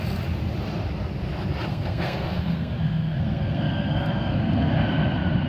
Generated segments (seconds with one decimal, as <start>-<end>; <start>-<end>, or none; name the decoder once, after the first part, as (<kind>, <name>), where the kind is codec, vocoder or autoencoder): 1.7-4.7 (codec, SNAC)